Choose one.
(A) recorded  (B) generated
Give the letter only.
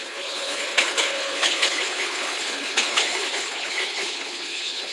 B